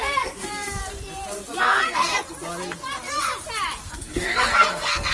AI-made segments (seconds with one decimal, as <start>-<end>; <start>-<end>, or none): 0.0-0.8; 1.6-2.1; 3.9-5.1